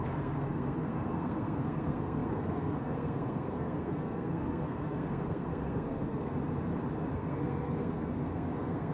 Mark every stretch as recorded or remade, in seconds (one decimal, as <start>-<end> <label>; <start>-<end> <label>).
0.0-6.4 remade; 6.4-7.1 recorded; 7.1-8.9 remade